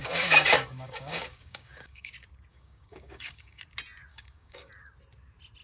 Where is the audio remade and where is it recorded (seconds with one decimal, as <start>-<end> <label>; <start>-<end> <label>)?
0.0-2.1 remade; 2.1-2.5 recorded; 2.5-3.6 remade; 3.6-4.1 recorded; 4.1-4.7 remade; 4.7-5.6 recorded